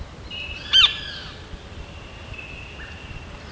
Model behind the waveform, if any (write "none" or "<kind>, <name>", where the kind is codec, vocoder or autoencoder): none